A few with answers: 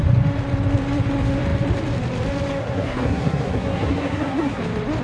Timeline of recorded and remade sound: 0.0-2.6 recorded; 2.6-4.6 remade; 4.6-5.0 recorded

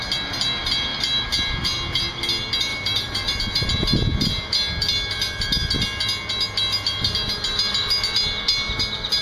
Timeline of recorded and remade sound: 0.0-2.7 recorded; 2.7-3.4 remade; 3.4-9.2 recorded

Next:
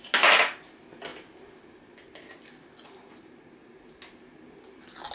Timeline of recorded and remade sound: 0.0-5.1 recorded

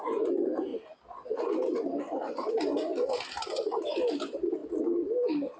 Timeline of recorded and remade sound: 0.0-5.6 recorded

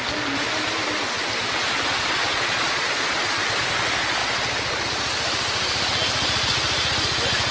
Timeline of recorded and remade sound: 0.0-1.6 recorded; 1.6-3.3 remade; 3.3-7.5 recorded

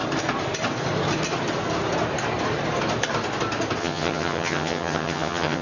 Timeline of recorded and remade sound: 0.0-3.8 recorded; 3.8-5.6 remade

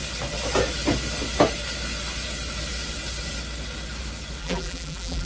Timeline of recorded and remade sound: 0.0-4.4 recorded; 4.4-5.3 remade